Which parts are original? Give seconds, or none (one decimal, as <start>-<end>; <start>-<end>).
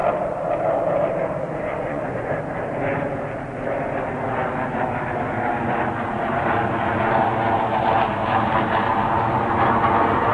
0.0-1.7; 2.3-10.3